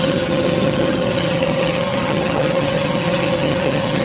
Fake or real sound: fake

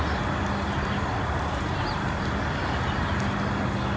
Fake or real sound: real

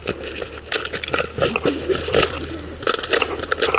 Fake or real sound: real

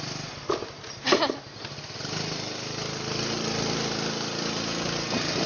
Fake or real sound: real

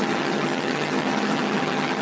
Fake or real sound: fake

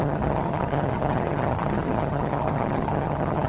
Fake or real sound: fake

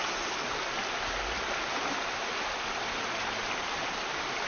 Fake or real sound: real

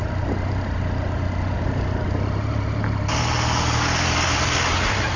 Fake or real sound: real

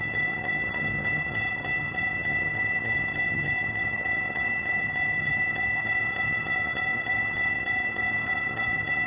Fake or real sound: fake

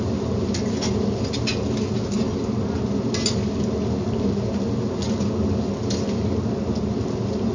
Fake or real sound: real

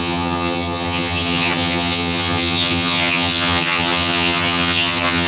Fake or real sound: fake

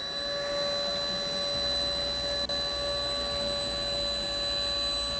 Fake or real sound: real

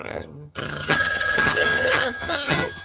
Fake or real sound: fake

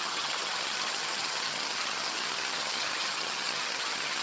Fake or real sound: fake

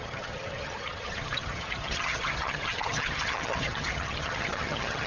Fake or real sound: fake